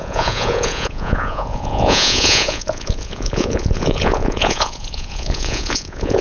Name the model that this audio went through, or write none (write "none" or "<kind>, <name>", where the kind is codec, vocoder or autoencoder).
vocoder, Vocos